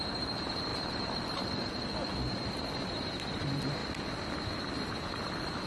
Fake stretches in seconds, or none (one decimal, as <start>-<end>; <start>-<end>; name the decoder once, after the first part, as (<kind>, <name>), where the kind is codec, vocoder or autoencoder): 0.7-1.4 (vocoder, BigVGAN v2)